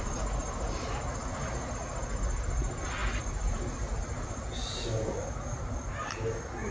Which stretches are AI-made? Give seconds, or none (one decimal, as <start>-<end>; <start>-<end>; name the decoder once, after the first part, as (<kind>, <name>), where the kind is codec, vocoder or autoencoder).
none